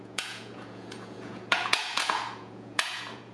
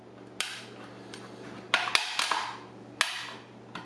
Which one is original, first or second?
second